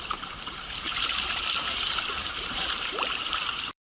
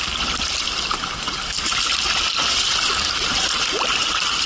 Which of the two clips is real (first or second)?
second